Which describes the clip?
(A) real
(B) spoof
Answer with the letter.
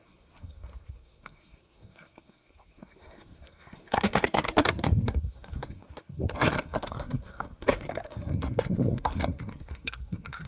B